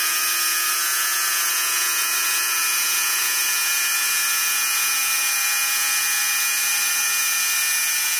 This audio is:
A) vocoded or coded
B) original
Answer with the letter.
A